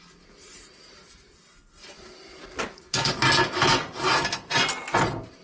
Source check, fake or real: real